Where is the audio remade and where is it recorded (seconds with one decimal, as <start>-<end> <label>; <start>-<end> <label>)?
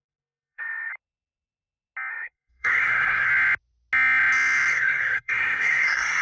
0.0-0.9 remade; 0.9-2.1 recorded; 2.1-3.3 remade; 3.3-4.7 recorded; 4.7-6.2 remade